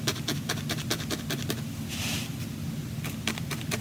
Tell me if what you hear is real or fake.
real